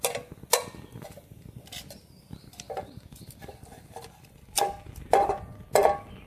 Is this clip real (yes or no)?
yes